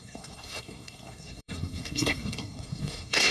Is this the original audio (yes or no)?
no